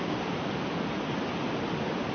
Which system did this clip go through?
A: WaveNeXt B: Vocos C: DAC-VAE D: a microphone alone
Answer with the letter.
D